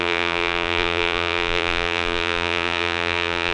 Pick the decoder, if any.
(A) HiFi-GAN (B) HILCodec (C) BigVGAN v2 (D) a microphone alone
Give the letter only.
C